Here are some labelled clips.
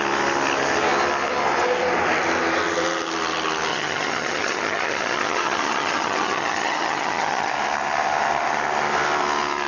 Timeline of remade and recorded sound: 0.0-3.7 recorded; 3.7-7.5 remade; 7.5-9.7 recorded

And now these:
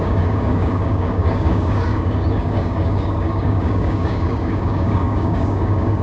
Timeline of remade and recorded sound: 0.0-6.0 remade

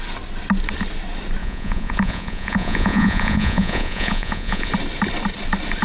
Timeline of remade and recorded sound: 0.0-1.4 recorded; 1.4-4.7 remade; 4.7-5.8 recorded